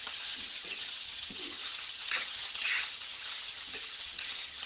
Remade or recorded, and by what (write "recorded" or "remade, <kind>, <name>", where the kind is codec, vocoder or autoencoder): remade, vocoder, HiFi-GAN